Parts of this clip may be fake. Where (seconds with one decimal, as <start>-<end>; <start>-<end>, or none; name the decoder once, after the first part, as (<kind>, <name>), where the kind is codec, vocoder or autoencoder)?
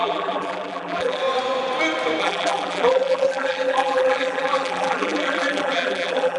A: 0.0-1.2 (vocoder, BigVGAN v2); 2.2-6.4